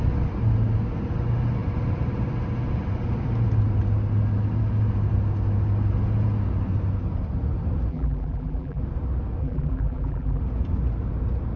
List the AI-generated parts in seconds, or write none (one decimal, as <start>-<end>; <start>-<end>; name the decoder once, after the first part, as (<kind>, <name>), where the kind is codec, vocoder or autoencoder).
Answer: 7.9-8.8 (vocoder, BigVGAN v2); 9.4-10.4